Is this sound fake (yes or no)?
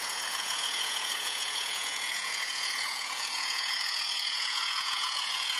yes